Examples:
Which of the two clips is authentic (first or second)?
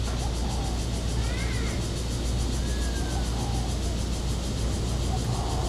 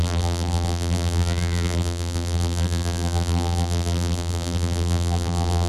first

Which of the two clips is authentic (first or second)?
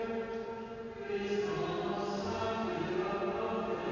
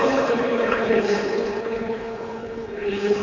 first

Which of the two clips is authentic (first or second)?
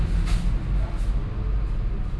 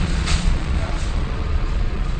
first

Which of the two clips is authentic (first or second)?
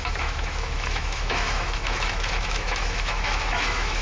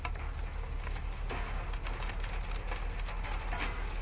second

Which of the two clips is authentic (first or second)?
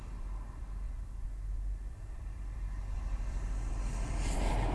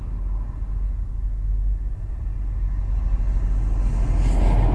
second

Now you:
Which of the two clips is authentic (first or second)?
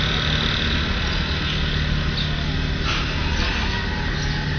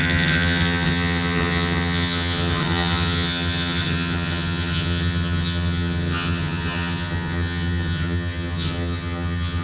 first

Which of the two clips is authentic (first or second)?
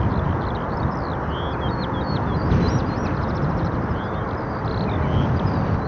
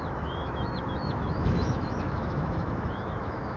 first